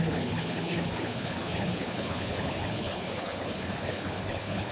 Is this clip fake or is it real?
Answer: fake